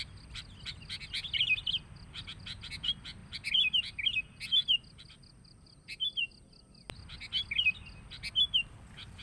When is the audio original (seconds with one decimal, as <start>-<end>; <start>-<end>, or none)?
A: 0.0-9.2